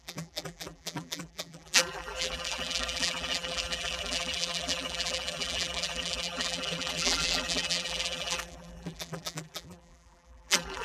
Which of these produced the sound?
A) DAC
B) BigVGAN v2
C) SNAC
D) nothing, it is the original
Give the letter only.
B